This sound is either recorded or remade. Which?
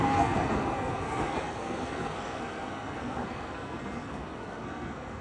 remade